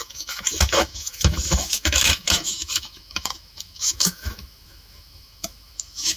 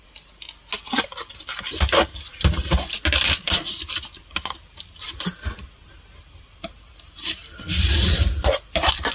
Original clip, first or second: second